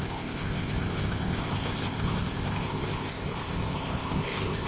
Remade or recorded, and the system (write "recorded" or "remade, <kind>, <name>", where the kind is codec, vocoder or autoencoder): remade, codec, ZipCodec